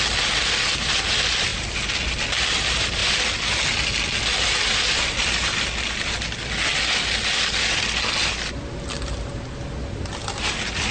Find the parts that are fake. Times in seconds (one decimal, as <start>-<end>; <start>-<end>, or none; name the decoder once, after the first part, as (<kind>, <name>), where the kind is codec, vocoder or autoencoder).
none